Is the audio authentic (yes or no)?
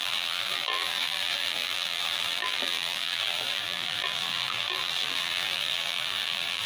no